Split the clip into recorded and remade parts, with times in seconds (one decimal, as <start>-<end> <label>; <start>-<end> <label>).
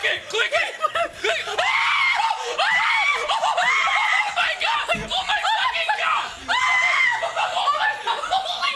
0.0-8.8 recorded